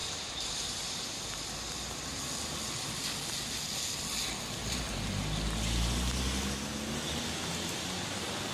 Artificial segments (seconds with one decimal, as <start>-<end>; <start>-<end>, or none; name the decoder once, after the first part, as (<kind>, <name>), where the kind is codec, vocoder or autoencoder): none